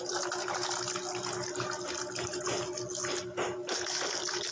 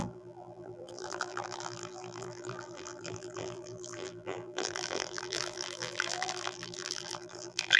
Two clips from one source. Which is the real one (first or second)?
first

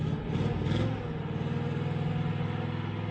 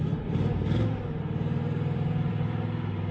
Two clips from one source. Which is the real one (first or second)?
first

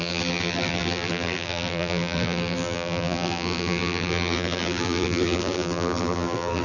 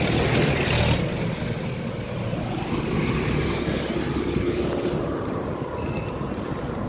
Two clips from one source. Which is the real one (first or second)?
second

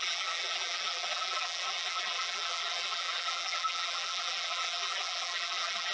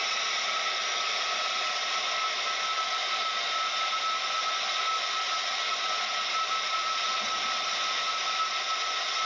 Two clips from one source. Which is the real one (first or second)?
second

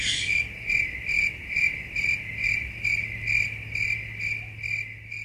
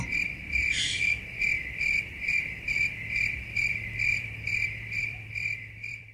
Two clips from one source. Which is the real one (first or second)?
first